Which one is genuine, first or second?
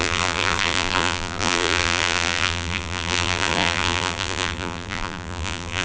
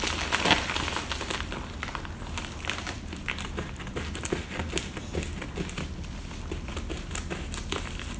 second